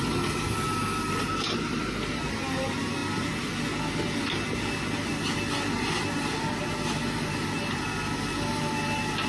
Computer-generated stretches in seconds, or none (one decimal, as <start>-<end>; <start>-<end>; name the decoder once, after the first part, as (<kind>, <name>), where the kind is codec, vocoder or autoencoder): 3.0-3.6 (vocoder, BigVGAN v2)

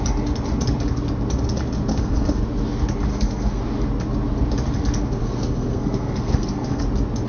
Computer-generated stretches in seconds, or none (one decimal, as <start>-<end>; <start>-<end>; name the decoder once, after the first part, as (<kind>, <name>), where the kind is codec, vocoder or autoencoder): 1.9-2.4 (codec, SNAC); 3.1-3.6; 5.2-6.8

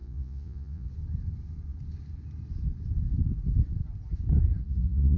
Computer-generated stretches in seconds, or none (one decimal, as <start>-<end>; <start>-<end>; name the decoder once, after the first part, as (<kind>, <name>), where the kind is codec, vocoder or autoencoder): 0.0-0.9 (vocoder, Vocos); 4.6-5.2

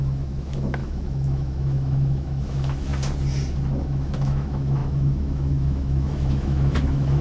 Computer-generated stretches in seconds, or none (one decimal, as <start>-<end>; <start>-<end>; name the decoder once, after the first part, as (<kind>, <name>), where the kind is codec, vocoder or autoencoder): 0.0-2.9 (autoencoder, DAC-VAE); 3.8-7.2

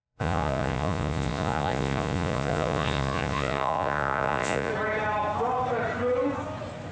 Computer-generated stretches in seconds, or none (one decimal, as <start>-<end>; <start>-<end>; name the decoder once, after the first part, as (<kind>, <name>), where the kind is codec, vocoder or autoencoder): 0.0-4.7 (vocoder, Vocos)

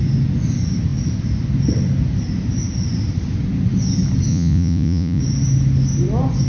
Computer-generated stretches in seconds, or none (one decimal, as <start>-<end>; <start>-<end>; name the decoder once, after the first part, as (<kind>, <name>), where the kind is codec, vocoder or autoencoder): 4.3-5.2 (vocoder, Vocos)